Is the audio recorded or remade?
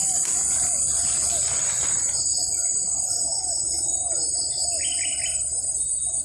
recorded